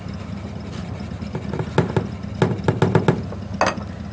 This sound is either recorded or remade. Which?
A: recorded